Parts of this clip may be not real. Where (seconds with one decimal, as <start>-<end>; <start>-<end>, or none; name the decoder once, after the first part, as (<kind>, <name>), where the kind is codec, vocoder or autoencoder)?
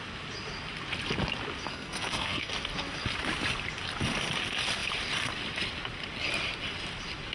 1.7-2.5 (codec, SNAC)